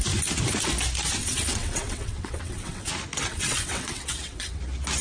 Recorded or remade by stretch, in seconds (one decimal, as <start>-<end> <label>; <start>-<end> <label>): 0.0-1.2 recorded; 1.2-2.9 remade; 2.9-3.3 recorded; 3.3-4.6 remade; 4.6-5.0 recorded